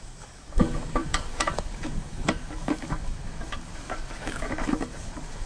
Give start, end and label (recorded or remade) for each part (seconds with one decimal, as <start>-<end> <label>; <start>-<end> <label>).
0.0-5.5 remade